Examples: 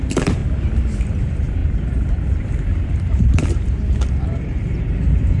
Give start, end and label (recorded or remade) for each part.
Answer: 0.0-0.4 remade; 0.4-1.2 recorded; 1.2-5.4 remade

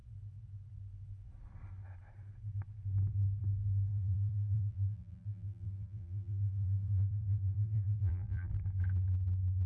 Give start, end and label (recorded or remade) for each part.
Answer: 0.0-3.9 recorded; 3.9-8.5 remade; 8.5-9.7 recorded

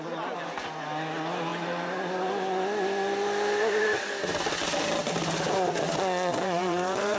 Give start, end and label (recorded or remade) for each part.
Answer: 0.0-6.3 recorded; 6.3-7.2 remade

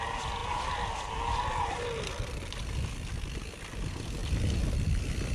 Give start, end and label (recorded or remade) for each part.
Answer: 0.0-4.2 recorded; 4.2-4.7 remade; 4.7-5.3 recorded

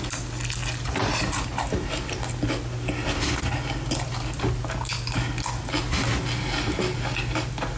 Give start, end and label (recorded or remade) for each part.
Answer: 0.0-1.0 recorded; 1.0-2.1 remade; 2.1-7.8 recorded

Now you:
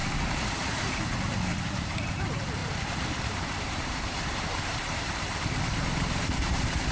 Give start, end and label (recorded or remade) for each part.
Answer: 0.0-6.9 remade

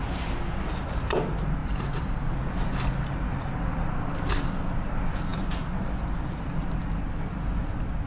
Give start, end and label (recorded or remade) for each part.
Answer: 0.0-1.6 recorded; 1.6-2.3 remade; 2.3-8.1 recorded